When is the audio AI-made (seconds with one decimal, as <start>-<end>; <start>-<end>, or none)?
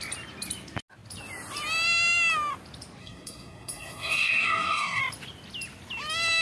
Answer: 3.0-5.0